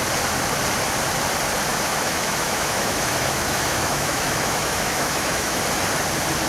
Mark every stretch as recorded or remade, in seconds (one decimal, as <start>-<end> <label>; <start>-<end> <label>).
0.0-1.7 recorded; 1.7-5.6 remade; 5.6-6.5 recorded